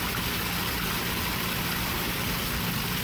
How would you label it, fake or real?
real